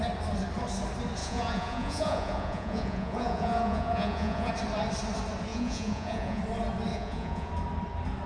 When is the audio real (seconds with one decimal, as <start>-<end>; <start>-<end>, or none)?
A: 0.0-1.2; 4.5-5.5; 6.4-6.9; 7.5-8.3